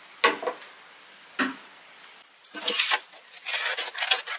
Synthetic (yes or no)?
no